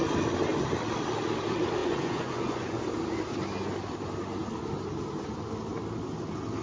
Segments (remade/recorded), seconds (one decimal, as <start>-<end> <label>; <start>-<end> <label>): 0.0-1.8 recorded; 1.8-2.8 remade; 2.8-6.6 recorded

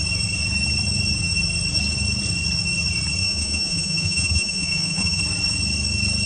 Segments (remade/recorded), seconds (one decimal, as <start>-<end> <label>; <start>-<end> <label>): 0.0-3.2 recorded; 3.2-5.2 remade; 5.2-6.3 recorded

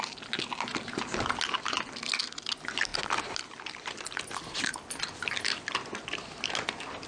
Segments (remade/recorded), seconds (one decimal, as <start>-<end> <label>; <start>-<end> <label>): 0.0-7.1 recorded

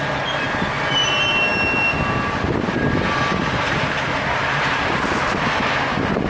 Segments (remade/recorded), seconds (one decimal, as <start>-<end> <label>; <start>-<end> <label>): 0.0-6.3 recorded